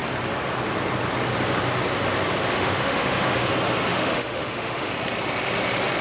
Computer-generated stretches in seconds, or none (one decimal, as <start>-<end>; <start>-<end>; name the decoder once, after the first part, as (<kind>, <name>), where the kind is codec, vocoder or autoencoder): 2.5-3.5 (autoencoder, DAC-VAE); 3.9-4.9